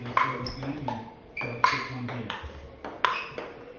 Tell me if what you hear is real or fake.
real